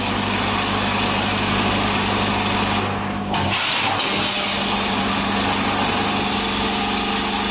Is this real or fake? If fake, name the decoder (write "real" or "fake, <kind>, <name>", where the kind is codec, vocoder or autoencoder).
real